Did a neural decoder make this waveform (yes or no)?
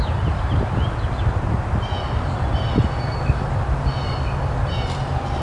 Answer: no